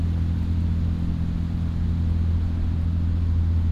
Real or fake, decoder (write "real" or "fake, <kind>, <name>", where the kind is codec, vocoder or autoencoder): real